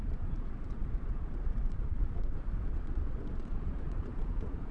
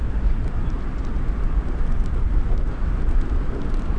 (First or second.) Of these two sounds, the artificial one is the first